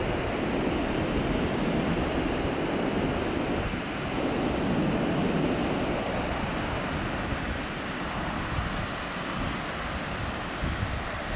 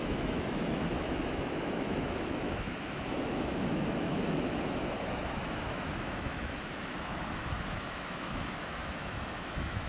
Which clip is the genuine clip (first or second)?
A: first